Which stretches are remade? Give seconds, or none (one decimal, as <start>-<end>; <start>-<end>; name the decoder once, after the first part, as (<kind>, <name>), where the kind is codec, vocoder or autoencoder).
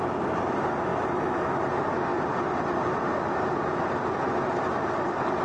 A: 0.9-1.6 (autoencoder, DAC-VAE)